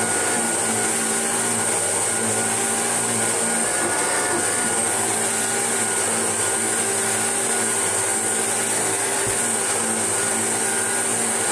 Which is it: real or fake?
real